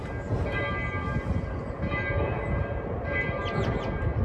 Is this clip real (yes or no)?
yes